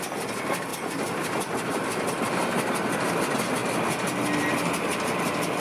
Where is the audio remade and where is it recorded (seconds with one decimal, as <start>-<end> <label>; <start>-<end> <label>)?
0.0-5.6 recorded